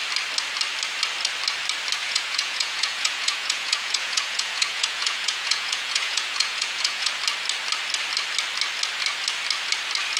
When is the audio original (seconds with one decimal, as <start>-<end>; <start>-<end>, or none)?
0.0-2.0; 7.1-10.2